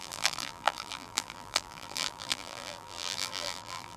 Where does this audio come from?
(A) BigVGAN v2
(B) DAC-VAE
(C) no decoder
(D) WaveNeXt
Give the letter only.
A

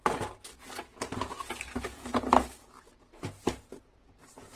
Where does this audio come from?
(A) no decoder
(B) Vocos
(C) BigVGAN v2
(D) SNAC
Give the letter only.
A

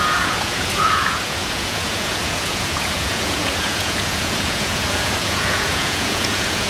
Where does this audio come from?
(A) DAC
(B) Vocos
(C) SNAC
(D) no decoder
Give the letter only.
B